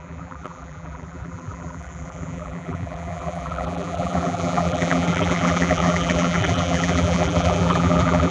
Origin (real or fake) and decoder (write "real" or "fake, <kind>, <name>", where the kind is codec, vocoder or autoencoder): fake, vocoder, BigVGAN v2